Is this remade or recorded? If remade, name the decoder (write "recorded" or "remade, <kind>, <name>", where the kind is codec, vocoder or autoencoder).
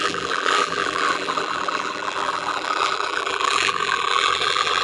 remade, vocoder, BigVGAN v2